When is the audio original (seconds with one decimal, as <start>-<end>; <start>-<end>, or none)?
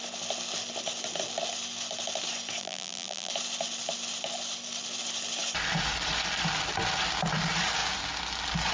0.0-2.6; 3.3-8.7